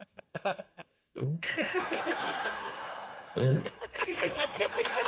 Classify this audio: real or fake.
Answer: fake